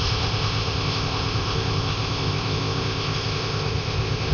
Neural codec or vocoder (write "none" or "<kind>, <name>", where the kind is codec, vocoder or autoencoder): codec, ZipCodec